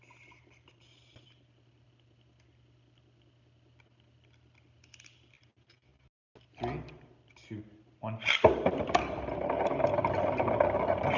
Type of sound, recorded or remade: recorded